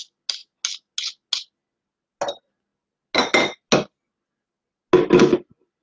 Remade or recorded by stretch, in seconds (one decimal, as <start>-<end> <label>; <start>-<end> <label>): 0.0-5.8 recorded